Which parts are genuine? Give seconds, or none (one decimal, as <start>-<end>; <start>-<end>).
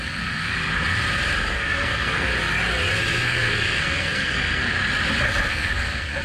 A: 0.5-1.5; 2.3-3.0; 4.8-5.5